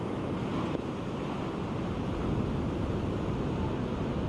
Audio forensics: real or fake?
real